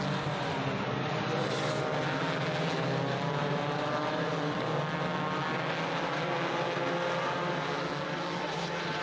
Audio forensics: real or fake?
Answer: real